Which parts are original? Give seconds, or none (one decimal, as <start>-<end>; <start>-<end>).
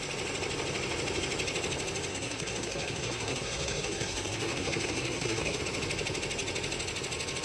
0.0-2.1; 5.6-7.4